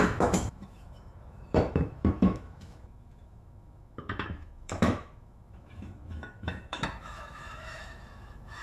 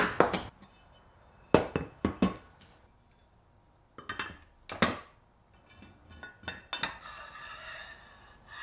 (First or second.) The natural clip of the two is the second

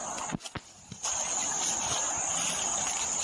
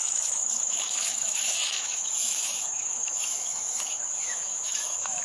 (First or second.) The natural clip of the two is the first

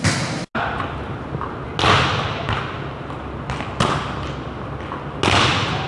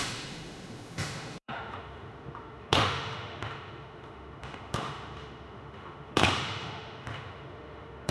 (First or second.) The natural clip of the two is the first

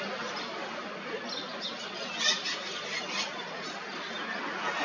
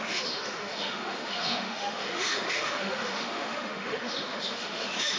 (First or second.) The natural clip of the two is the first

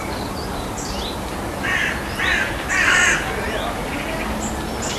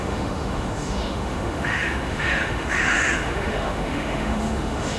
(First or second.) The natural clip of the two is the first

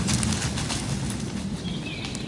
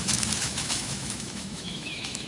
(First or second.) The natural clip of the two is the first